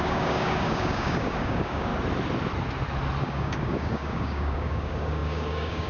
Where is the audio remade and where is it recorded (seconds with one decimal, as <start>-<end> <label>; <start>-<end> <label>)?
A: 0.0-1.9 remade; 1.9-3.2 recorded; 3.2-5.9 remade